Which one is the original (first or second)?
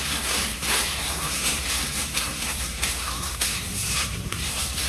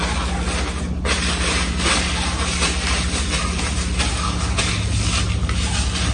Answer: second